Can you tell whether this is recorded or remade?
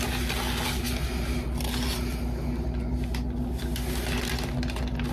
recorded